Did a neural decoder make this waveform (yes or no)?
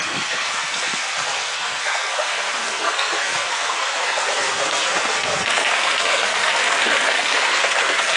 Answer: yes